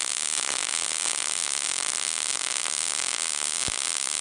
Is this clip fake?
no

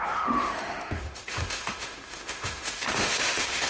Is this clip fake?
yes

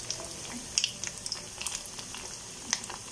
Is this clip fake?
no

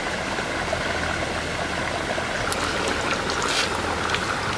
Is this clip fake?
no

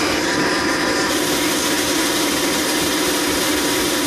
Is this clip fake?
yes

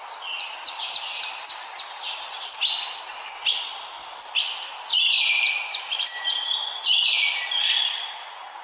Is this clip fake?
no